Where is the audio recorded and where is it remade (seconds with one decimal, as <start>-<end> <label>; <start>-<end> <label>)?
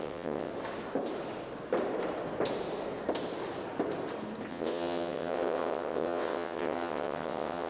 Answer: 0.0-0.5 remade; 0.5-4.5 recorded; 4.5-7.7 remade